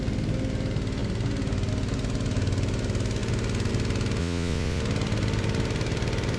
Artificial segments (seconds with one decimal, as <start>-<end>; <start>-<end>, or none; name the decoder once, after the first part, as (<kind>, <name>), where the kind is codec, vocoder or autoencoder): 4.2-4.8 (vocoder, Vocos)